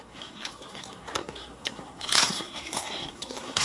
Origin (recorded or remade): remade